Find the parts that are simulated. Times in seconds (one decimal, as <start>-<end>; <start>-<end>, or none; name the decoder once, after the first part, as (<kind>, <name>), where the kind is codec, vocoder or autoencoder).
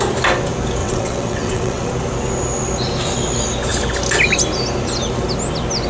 0.8-1.9 (vocoder, WaveNeXt)